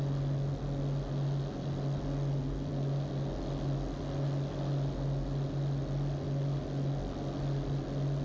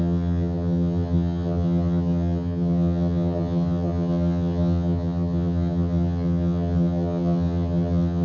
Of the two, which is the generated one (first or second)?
second